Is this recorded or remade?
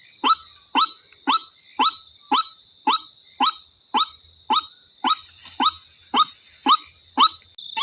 recorded